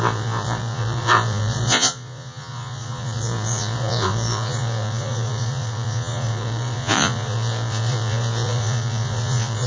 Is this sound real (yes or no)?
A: no